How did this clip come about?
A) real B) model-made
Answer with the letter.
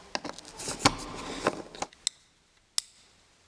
A